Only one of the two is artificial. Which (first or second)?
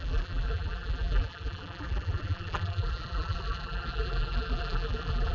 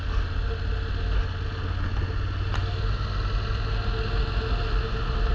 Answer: first